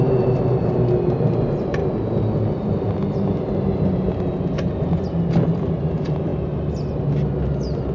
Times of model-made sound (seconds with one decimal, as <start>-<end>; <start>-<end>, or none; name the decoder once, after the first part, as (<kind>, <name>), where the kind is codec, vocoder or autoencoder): none

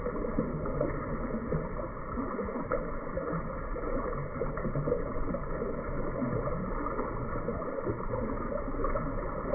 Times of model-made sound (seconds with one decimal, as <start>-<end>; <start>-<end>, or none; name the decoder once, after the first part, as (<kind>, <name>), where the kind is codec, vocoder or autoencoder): 4.2-5.5 (vocoder, BigVGAN v2); 7.5-8.1

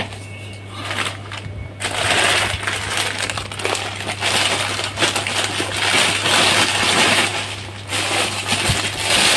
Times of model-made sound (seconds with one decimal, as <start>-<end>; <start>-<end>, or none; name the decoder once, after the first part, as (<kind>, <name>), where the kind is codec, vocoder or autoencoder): none

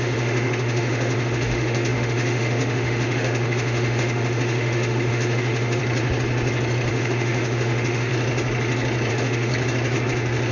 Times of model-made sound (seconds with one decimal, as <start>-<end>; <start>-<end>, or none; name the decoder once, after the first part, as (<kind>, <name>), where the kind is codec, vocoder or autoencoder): 0.0-5.8 (autoencoder, DAC-VAE); 6.9-8.1; 9.1-9.5

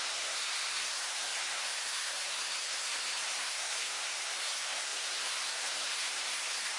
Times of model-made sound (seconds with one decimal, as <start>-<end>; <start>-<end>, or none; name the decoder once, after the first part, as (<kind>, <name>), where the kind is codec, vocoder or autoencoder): 0.0-6.8 (codec, SNAC)

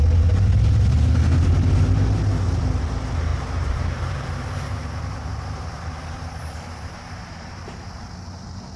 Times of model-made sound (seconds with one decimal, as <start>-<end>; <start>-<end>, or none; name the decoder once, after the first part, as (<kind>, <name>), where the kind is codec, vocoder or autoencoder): 3.3-7.9 (vocoder, BigVGAN v2)